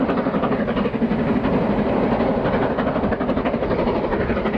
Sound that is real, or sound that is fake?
real